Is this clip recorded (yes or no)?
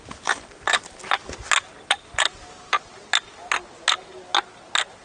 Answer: yes